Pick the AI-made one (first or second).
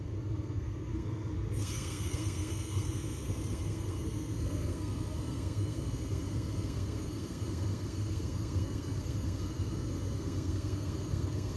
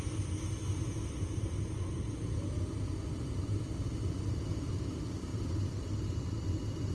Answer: first